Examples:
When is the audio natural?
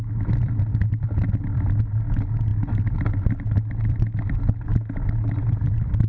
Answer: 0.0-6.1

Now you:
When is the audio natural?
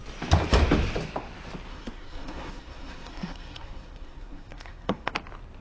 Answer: 0.0-1.7; 5.1-5.6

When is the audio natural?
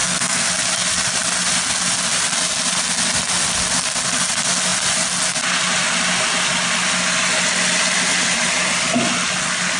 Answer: 0.5-9.8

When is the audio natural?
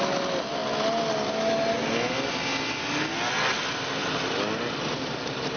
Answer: 0.0-5.6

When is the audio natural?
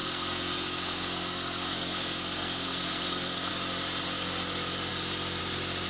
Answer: 3.5-5.9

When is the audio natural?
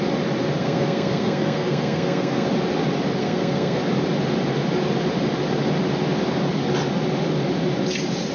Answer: 0.0-0.6; 2.5-3.2; 3.8-8.3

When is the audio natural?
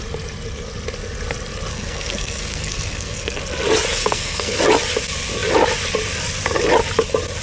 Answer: 0.0-1.7; 3.4-4.0; 4.6-7.4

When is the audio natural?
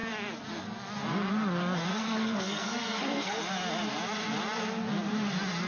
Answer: 0.0-1.9; 3.4-5.7